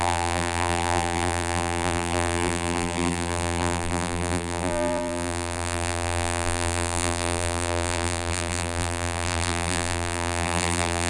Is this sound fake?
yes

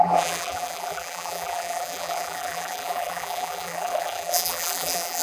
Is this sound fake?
yes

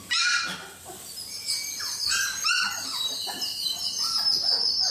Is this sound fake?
no